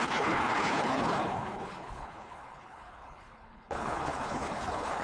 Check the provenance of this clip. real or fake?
fake